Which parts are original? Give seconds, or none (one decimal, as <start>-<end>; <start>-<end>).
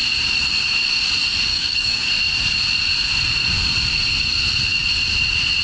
0.0-1.5; 2.1-5.6